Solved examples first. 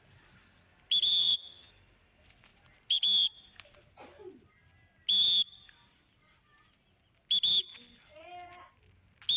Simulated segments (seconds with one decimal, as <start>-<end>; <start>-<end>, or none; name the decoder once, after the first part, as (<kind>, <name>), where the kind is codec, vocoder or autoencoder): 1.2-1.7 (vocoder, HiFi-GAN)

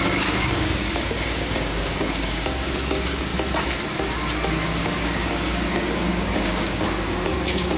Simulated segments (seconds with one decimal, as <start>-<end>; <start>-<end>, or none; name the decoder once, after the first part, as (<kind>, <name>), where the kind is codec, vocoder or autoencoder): 0.0-3.3 (codec, DAC); 4.8-7.8

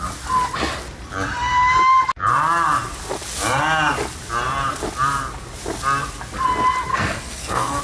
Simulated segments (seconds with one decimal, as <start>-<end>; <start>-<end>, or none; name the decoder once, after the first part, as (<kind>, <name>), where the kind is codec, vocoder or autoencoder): 6.9-7.8 (codec, SNAC)

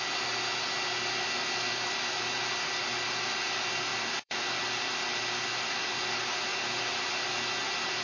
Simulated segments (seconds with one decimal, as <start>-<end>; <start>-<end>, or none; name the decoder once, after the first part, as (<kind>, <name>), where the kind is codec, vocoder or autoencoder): 3.9-4.6 (vocoder, BigVGAN v2); 6.5-7.1